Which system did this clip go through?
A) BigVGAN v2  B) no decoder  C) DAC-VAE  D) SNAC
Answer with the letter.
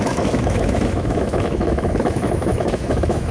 C